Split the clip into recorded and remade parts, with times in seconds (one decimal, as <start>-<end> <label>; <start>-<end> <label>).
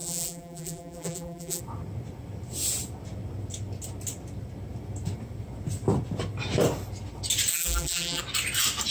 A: 0.0-1.6 remade; 1.6-7.5 recorded; 7.5-8.2 remade; 8.2-8.9 recorded